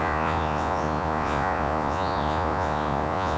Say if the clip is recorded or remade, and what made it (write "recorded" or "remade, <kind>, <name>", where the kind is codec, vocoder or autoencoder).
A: remade, vocoder, Vocos